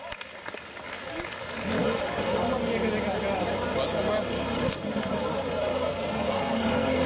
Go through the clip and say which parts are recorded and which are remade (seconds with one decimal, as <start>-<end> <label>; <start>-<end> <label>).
0.0-5.7 recorded; 5.7-7.1 remade